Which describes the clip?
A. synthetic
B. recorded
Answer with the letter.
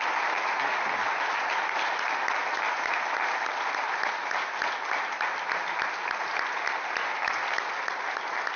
B